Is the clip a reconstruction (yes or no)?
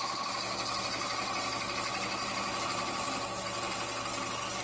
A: no